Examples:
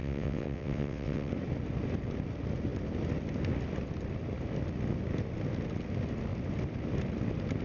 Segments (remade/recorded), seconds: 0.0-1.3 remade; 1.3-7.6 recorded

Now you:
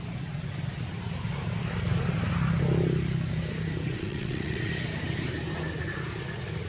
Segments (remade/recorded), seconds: 0.0-3.9 recorded; 3.9-4.7 remade; 4.7-6.7 recorded